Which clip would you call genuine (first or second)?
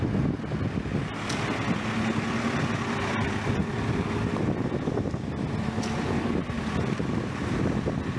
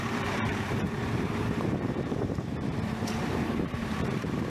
first